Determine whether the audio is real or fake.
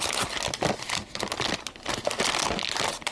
real